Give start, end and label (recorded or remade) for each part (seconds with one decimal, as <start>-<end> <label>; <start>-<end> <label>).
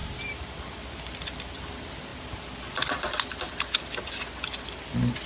0.0-5.3 recorded